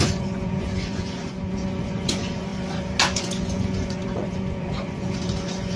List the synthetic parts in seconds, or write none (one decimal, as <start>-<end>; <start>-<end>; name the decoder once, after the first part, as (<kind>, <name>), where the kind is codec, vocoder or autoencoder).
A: 0.0-2.5 (vocoder, Vocos); 3.2-5.8